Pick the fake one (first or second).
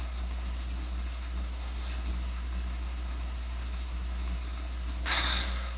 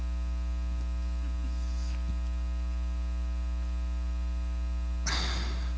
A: first